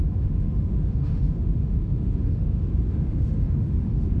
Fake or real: fake